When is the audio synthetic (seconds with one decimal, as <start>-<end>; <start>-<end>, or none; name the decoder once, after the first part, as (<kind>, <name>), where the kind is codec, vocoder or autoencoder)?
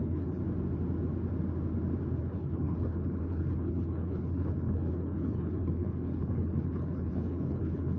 0.0-0.4 (codec, HILCodec); 2.2-8.0